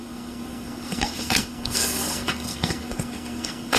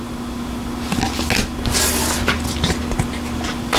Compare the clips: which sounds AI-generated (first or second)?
first